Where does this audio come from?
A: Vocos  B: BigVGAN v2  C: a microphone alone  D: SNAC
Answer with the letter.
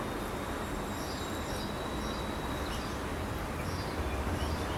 C